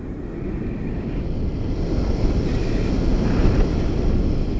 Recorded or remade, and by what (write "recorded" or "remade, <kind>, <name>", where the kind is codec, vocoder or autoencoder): recorded